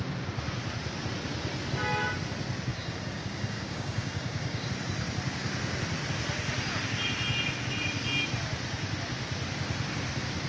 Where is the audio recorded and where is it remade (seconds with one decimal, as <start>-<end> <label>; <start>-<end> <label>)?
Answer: 0.0-2.7 recorded; 2.7-4.7 remade; 4.7-10.5 recorded